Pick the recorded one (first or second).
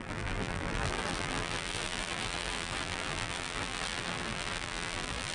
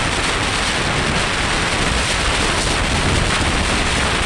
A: second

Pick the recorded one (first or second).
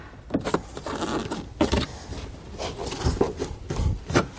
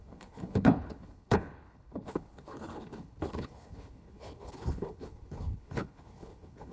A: first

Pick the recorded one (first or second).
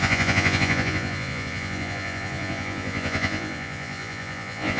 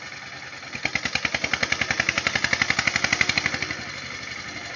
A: second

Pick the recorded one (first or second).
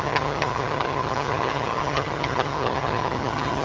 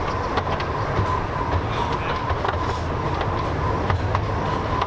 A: second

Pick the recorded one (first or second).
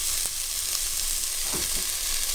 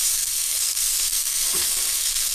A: first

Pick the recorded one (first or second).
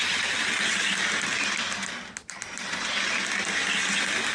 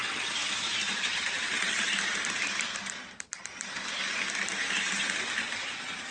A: first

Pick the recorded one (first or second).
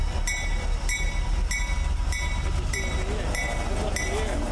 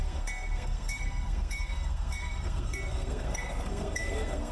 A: first